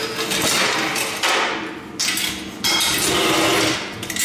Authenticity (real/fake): real